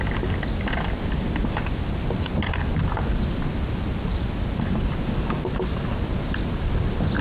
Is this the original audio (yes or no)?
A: yes